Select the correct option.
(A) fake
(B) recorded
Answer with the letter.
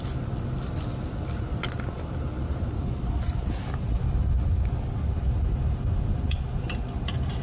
B